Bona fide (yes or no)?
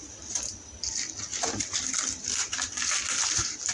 no